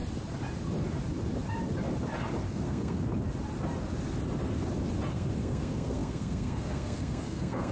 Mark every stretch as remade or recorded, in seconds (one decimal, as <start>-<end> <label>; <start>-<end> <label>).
0.0-2.5 recorded; 2.5-3.1 remade; 3.1-5.1 recorded; 5.1-7.7 remade